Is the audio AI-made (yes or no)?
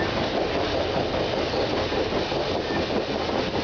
no